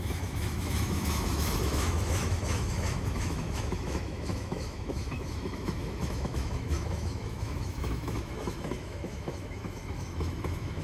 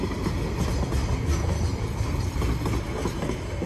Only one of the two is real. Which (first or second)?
second